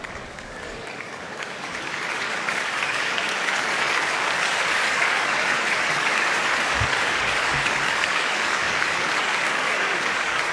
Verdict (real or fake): fake